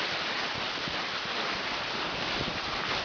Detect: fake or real real